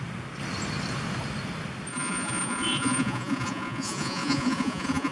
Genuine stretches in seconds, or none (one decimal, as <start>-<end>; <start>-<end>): 0.0-1.9